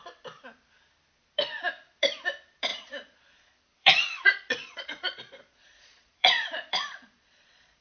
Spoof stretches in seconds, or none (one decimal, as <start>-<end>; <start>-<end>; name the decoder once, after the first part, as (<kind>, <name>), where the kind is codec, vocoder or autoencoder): 2.7-7.8 (vocoder, Vocos)